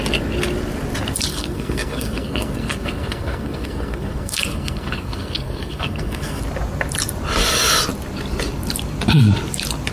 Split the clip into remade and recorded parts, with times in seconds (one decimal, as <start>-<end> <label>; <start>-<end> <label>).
0.0-1.3 recorded; 1.3-6.4 remade; 6.4-9.9 recorded